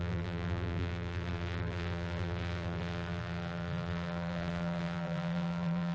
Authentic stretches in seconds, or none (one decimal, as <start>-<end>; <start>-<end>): none